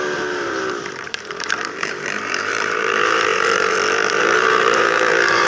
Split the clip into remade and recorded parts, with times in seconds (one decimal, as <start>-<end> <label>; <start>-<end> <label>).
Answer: 0.0-5.5 remade

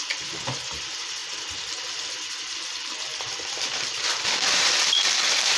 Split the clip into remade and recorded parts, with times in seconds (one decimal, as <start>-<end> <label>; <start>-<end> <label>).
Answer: 0.0-1.2 remade; 1.2-2.4 recorded; 2.4-5.6 remade